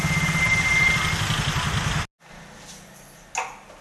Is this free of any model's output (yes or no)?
yes